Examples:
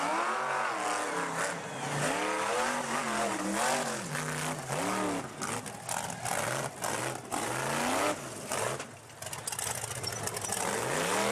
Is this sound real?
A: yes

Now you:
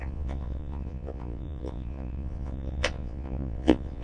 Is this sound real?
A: no